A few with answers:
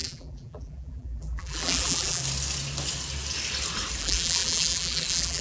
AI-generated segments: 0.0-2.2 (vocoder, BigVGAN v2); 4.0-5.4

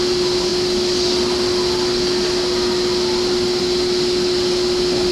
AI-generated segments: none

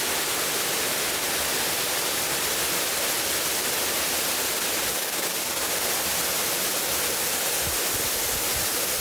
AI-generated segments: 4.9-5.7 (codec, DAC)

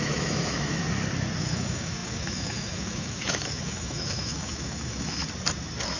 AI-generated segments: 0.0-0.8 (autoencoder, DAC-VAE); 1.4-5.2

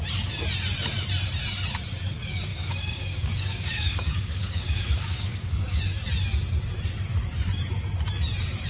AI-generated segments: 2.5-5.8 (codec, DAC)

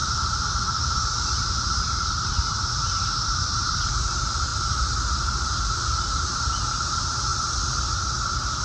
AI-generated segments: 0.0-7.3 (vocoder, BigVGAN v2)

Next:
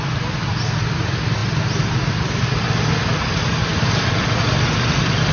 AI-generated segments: none

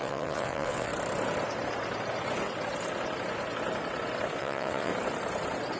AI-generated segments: 0.0-0.9 (vocoder, WaveNeXt); 4.4-4.9